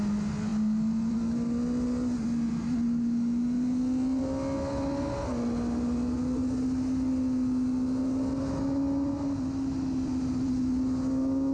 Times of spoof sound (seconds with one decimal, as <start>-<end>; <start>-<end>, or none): none

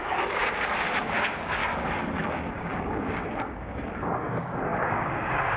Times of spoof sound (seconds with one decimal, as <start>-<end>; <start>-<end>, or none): 0.0-0.4; 1.0-1.6; 2.2-5.6

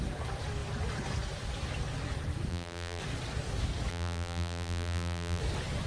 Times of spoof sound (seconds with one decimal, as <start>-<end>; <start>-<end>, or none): 2.5-3.0; 3.9-5.4

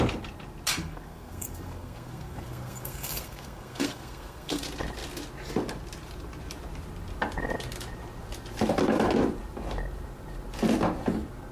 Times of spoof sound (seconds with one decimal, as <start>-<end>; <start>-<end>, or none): 0.8-4.6

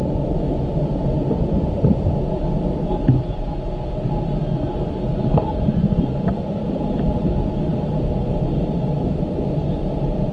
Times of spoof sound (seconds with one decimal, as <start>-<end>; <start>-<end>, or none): 0.0-0.8

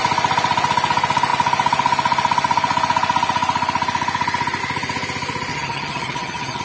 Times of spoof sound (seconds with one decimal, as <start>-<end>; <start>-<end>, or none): 5.5-6.6

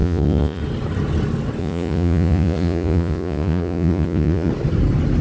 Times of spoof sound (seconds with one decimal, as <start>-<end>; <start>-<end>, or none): 0.0-0.6; 1.6-4.5